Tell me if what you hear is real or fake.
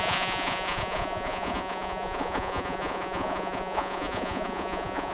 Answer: fake